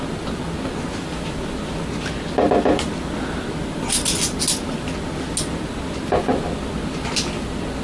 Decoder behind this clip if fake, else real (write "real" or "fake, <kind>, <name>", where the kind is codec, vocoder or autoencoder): real